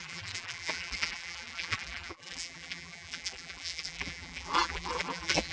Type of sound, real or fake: fake